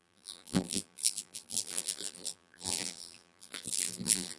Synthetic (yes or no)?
yes